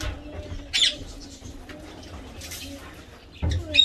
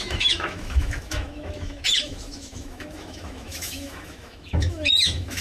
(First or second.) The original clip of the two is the first